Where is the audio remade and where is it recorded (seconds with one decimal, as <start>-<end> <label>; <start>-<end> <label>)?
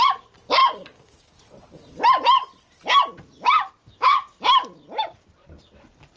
0.0-0.6 recorded; 0.6-1.4 remade; 1.4-3.8 recorded; 3.8-4.4 remade; 4.4-6.2 recorded